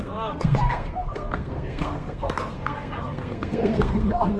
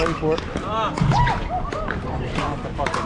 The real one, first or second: second